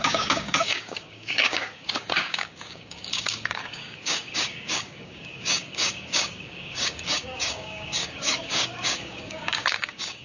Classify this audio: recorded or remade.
remade